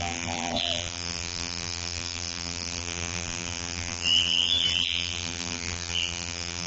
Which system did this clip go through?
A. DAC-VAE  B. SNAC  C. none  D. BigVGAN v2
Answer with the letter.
D